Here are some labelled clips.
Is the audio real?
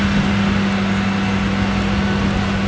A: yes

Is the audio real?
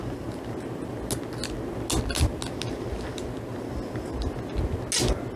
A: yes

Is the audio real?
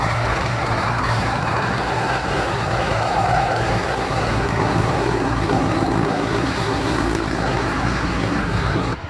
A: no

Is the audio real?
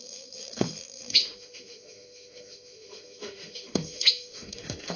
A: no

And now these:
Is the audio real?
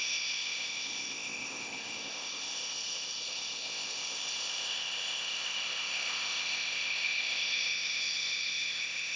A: no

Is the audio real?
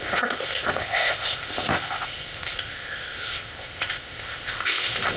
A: no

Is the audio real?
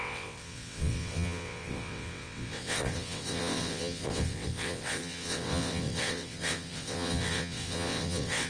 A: no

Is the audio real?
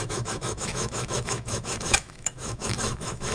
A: no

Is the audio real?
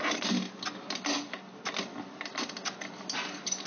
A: yes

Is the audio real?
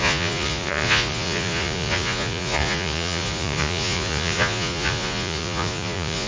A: no